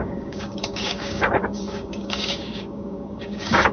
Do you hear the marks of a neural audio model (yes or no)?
yes